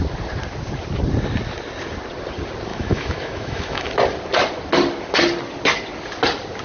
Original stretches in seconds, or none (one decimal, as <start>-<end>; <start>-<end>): 0.0-2.7; 3.9-6.6